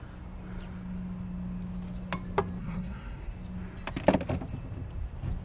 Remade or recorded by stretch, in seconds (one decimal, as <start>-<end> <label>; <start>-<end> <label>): 0.0-2.6 recorded; 2.6-3.3 remade; 3.3-5.4 recorded